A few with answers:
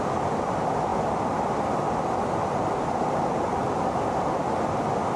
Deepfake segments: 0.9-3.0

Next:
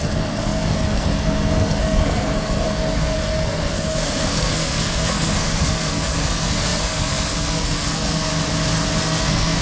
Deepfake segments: 0.0-8.3; 9.0-9.6

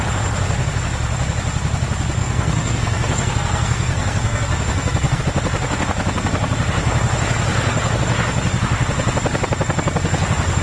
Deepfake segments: 2.2-5.2

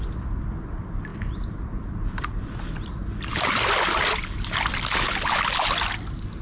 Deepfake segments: 1.1-2.4; 3.0-4.7